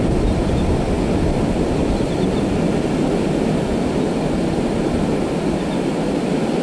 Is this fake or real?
real